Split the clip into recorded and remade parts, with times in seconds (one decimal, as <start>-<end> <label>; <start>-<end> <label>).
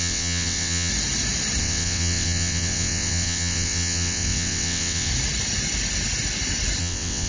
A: 0.0-0.9 remade; 0.9-1.6 recorded; 1.6-5.1 remade; 5.1-6.8 recorded; 6.8-7.3 remade